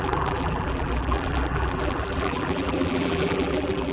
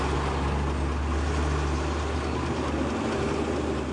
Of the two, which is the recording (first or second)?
second